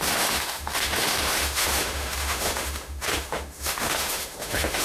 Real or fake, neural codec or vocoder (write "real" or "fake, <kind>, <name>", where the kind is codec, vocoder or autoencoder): fake, autoencoder, DAC-VAE